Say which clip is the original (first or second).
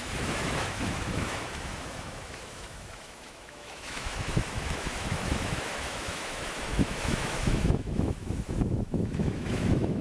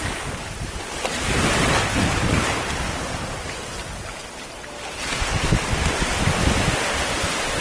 second